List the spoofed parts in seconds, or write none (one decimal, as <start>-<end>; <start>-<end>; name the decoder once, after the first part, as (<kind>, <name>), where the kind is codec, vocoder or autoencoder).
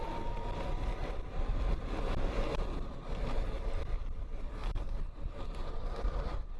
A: 1.0-1.8 (vocoder, BigVGAN v2); 4.6-6.6